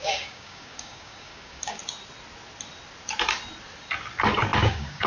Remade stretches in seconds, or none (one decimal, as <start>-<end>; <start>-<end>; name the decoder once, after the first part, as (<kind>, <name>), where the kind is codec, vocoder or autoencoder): 0.0-1.8 (codec, DAC); 4.6-5.1